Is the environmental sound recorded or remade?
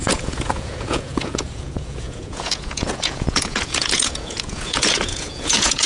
remade